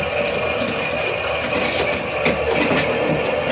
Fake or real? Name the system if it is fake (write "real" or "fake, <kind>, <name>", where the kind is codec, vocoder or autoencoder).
real